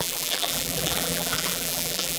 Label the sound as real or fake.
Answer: fake